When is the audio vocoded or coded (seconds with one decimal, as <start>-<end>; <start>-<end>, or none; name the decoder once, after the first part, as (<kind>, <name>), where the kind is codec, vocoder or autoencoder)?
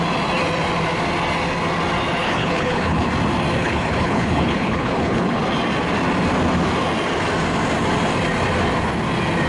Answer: 2.2-3.1 (codec, HILCodec); 3.6-5.4